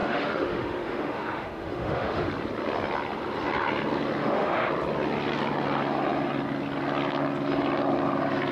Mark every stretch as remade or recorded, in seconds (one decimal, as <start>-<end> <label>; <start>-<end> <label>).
0.0-2.3 remade; 2.3-4.2 recorded; 4.2-4.7 remade; 4.7-8.5 recorded